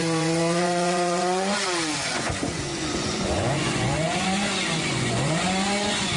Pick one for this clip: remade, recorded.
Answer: remade